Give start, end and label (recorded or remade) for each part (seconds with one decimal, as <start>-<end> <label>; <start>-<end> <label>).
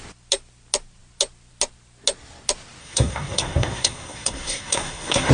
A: 0.0-2.8 recorded; 2.8-5.3 remade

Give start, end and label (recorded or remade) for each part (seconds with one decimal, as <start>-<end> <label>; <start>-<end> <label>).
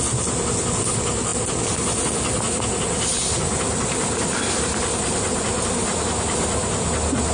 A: 0.0-7.3 recorded